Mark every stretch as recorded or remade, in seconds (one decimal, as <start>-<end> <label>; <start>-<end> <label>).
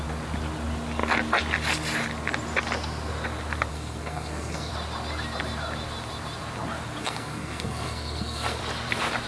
0.0-3.7 recorded; 3.7-4.7 remade; 4.7-7.0 recorded; 7.0-8.6 remade; 8.6-9.3 recorded